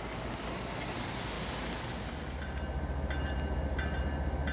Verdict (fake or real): real